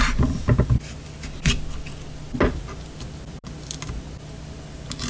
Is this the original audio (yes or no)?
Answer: yes